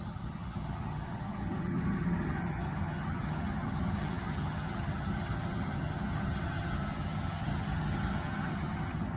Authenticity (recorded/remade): remade